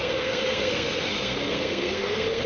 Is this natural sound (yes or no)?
no